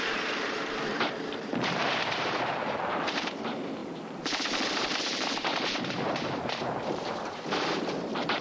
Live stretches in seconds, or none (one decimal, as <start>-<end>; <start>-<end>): none